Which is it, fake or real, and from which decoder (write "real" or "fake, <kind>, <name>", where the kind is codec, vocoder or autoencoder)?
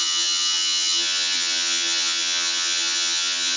fake, vocoder, HiFi-GAN